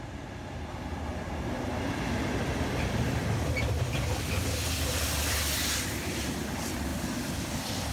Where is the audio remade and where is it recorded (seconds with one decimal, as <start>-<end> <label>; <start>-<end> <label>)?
0.0-7.9 recorded